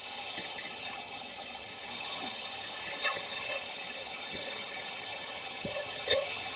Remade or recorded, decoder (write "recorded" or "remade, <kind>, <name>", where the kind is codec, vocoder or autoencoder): remade, vocoder, HiFi-GAN